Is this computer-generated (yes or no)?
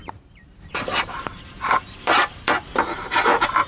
yes